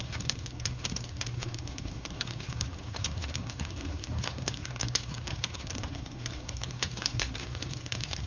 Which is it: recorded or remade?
remade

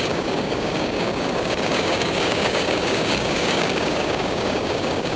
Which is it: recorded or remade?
remade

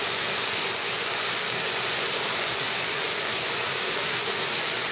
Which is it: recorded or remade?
remade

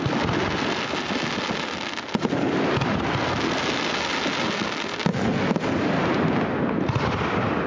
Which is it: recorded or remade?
recorded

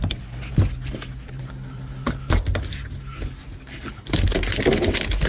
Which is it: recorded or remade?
recorded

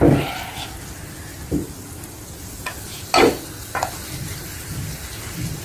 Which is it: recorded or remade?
recorded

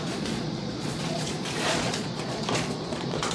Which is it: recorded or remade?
remade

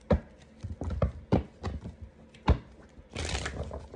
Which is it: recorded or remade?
recorded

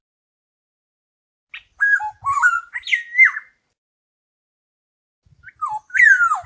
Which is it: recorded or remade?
recorded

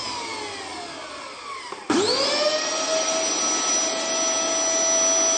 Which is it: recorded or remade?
recorded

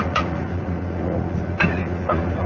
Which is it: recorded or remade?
remade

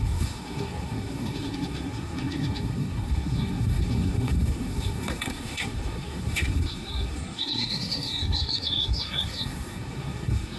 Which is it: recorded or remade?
remade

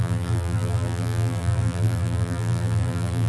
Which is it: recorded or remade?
remade